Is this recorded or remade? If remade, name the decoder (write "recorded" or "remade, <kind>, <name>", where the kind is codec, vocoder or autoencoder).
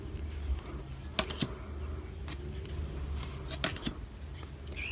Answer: recorded